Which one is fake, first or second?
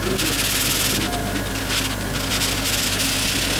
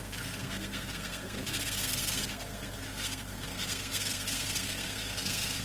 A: second